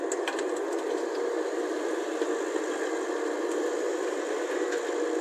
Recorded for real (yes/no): yes